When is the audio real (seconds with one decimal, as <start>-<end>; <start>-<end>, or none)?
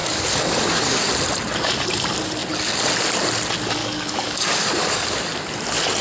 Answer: 1.1-3.8; 5.2-6.0